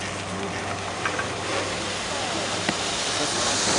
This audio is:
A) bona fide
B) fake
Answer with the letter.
A